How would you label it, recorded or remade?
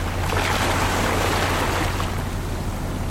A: recorded